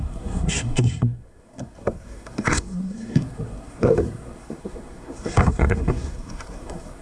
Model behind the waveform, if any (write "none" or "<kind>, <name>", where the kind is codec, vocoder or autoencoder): codec, SNAC